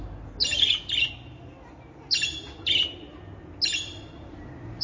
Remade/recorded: recorded